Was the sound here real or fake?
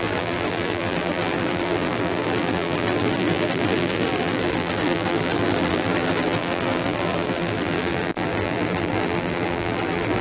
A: fake